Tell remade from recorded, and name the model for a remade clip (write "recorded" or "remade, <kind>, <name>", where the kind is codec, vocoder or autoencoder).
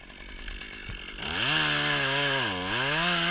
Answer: recorded